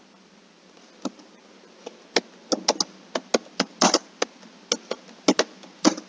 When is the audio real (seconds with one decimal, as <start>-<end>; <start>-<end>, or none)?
0.0-6.1